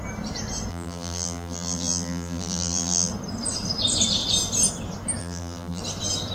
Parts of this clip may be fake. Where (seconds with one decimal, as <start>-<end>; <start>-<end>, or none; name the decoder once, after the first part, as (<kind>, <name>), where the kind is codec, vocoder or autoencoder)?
0.7-3.1 (vocoder, BigVGAN v2); 5.2-5.8

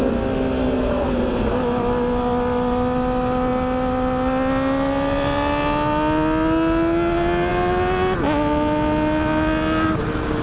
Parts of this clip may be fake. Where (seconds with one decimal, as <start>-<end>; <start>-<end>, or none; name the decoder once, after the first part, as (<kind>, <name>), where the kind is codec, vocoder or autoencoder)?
none

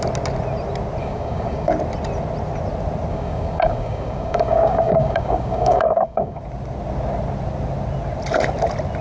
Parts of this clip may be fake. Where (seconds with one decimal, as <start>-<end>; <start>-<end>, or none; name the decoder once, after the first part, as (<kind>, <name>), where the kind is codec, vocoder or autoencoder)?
1.0-1.7 (codec, DAC); 3.1-6.4

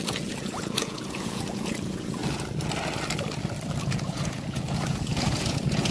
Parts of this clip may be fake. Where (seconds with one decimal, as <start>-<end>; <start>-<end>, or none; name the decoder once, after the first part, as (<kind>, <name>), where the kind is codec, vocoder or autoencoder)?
0.0-2.2 (vocoder, Vocos); 3.8-5.9